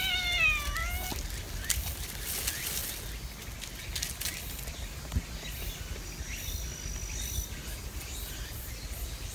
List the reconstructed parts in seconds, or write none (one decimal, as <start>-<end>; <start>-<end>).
none